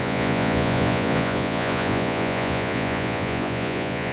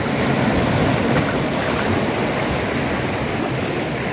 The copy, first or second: first